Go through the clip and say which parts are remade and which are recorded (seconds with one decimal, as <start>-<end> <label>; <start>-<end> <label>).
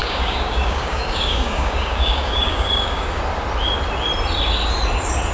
0.0-3.2 remade; 3.2-5.3 recorded